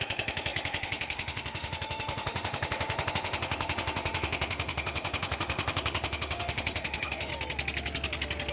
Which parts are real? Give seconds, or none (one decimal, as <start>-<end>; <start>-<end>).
7.3-8.5

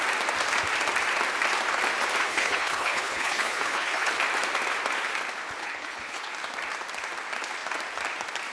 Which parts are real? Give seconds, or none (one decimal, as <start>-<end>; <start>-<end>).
0.0-2.2; 4.1-5.6; 6.3-8.5